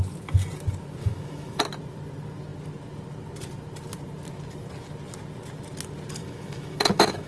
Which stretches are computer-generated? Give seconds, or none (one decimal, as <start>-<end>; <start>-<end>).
1.0-1.6; 6.2-7.3

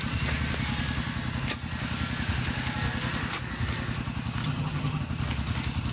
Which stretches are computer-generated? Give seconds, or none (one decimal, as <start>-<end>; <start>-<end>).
4.4-5.0

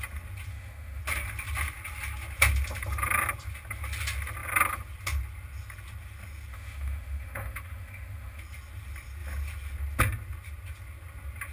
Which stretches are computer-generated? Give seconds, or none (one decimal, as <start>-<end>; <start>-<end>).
0.5-1.0; 6.5-8.4

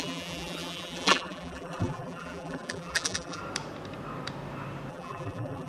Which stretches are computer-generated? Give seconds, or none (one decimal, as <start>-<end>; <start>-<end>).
0.0-3.4; 4.9-5.7

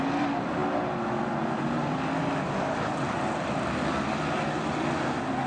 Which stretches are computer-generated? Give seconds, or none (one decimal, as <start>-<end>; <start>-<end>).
none

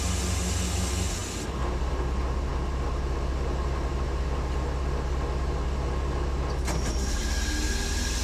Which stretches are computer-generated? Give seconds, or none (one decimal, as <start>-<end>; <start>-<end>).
none

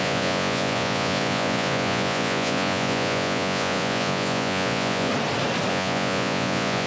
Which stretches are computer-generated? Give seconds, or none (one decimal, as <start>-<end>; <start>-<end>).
0.0-5.1; 5.7-6.9